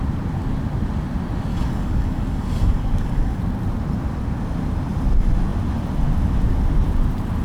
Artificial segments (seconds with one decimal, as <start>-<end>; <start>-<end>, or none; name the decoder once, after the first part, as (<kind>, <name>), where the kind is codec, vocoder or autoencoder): 1.5-3.4 (codec, DAC)